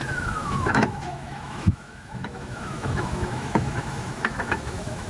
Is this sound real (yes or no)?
no